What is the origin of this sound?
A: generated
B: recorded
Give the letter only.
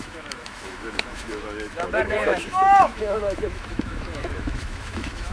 A